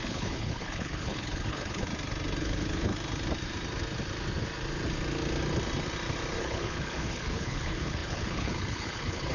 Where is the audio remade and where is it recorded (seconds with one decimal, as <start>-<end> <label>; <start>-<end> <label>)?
0.0-1.9 remade; 1.9-2.4 recorded; 2.4-2.9 remade; 2.9-6.4 recorded; 6.4-9.3 remade